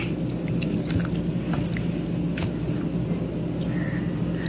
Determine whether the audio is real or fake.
real